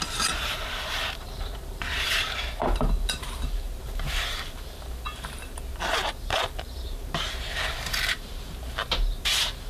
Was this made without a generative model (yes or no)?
no